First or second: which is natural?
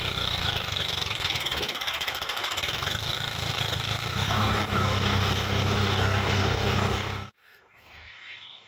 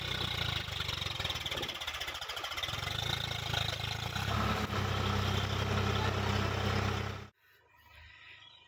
second